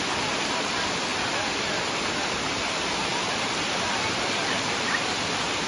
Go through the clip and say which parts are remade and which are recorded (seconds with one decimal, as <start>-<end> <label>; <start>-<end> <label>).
0.0-5.7 recorded